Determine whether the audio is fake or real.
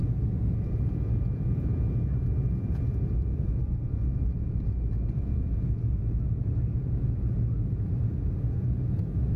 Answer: fake